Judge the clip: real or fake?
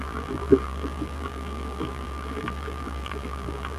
fake